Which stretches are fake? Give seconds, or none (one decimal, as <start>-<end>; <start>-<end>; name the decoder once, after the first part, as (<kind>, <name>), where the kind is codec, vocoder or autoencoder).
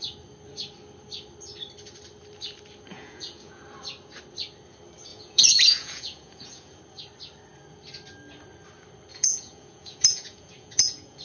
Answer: 2.9-3.6 (vocoder, Vocos); 5.1-6.8; 9.1-11.2